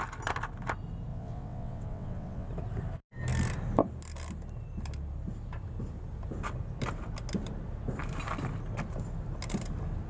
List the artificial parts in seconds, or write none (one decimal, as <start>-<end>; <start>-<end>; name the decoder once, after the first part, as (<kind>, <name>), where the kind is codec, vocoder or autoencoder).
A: 1.1-2.5 (vocoder, WaveNeXt)